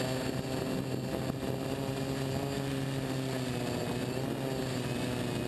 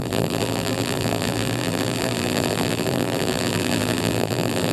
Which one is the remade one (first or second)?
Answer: second